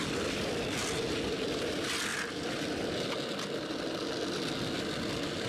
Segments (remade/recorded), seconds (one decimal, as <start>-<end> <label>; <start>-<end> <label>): 0.0-5.5 recorded